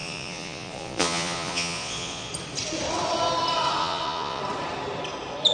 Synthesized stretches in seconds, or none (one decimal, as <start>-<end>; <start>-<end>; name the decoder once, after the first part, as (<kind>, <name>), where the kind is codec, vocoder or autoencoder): 0.0-2.3 (vocoder, Vocos); 3.8-4.4